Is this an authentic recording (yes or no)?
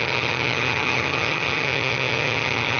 no